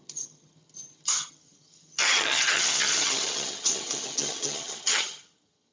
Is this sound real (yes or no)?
no